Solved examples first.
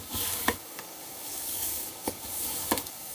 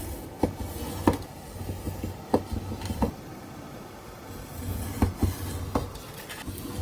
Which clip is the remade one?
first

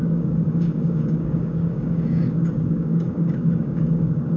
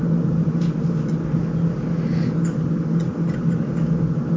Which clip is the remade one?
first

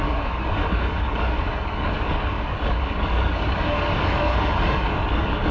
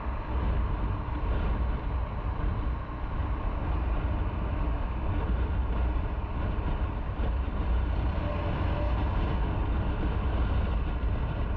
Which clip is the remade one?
first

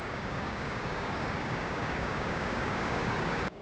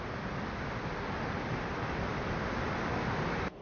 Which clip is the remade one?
first